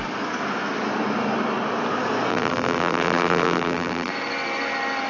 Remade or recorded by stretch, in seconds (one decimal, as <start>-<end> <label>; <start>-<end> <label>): 0.0-2.3 recorded; 2.3-4.1 remade; 4.1-5.1 recorded